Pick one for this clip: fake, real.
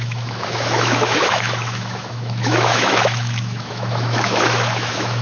fake